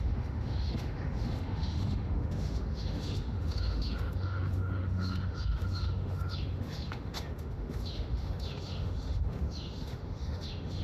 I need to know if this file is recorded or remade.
remade